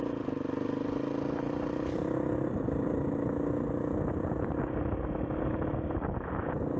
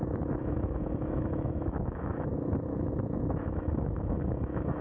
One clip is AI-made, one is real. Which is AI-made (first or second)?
second